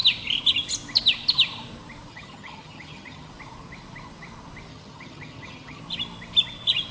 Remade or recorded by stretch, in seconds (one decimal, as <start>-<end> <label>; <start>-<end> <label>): 0.0-2.1 recorded; 2.1-3.3 remade; 3.3-4.7 recorded; 4.7-5.8 remade; 5.8-6.9 recorded